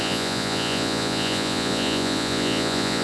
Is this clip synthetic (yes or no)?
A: yes